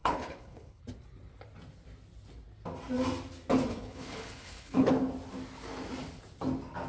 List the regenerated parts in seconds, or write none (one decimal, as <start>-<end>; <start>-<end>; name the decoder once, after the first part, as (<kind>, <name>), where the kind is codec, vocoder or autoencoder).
0.0-0.8 (codec, HILCodec); 3.7-4.9